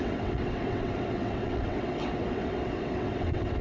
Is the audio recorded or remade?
remade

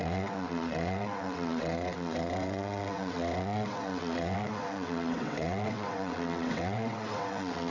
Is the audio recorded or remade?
remade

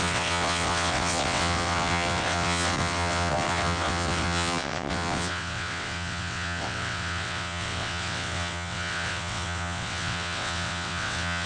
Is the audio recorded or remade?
remade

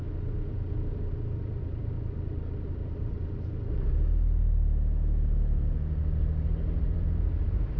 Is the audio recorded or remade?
recorded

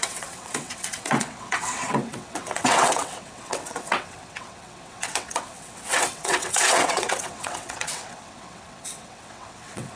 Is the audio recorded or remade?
remade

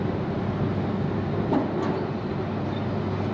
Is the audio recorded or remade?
recorded